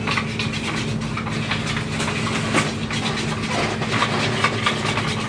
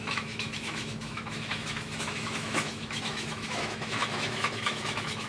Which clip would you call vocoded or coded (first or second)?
second